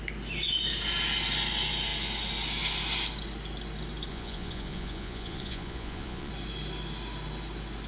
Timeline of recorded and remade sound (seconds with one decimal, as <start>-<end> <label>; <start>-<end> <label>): 0.0-4.1 recorded; 4.1-6.3 remade; 6.3-7.9 recorded